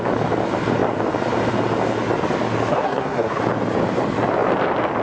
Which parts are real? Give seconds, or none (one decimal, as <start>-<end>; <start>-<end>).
0.0-2.7; 3.4-5.0

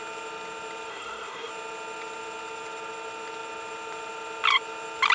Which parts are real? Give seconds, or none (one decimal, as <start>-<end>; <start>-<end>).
0.0-0.9; 1.5-5.1

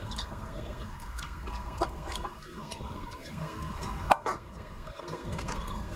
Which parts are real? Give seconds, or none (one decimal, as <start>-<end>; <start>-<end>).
none

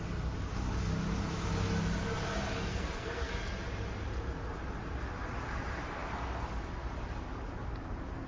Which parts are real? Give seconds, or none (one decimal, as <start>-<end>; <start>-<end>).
0.0-2.7; 3.3-8.3

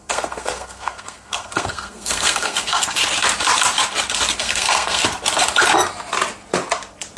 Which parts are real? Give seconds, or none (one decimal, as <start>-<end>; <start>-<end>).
3.0-4.4; 5.0-7.2